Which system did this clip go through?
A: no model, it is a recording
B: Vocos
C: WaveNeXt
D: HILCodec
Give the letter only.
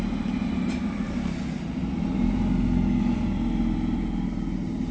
A